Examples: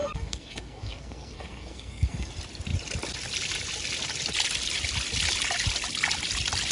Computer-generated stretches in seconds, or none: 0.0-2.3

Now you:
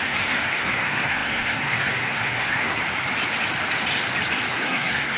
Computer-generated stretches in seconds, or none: 0.0-2.8; 4.5-5.2

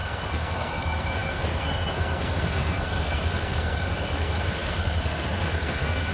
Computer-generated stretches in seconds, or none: 0.0-6.1

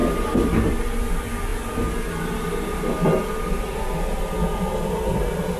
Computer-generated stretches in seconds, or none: none

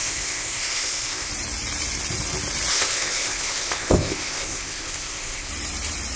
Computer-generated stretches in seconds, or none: 0.0-1.3; 2.7-5.5

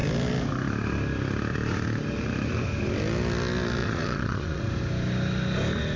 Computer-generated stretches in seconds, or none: 3.8-4.6